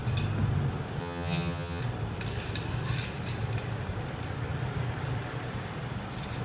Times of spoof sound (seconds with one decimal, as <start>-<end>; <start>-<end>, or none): 1.0-1.8